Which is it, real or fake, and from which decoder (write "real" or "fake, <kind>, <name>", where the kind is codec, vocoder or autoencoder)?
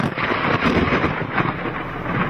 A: real